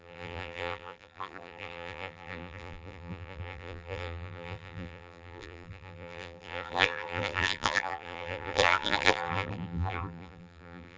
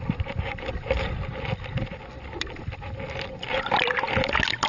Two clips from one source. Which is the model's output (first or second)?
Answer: first